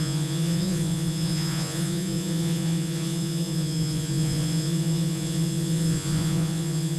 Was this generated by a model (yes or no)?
yes